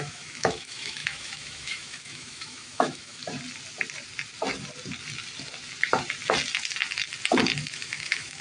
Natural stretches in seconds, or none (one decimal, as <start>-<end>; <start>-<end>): 3.2-7.7